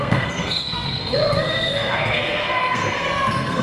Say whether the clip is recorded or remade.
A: remade